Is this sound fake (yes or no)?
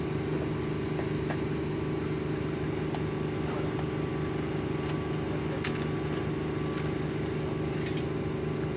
no